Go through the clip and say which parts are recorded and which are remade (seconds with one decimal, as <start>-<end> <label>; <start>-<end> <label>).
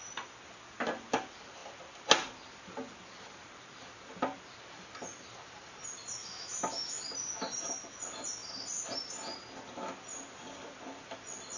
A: 0.0-6.2 recorded; 6.2-7.0 remade; 7.0-11.6 recorded